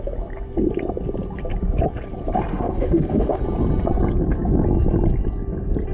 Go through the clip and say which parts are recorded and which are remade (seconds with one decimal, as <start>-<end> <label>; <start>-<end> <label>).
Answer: 0.0-2.5 recorded; 2.5-3.4 remade; 3.4-5.9 recorded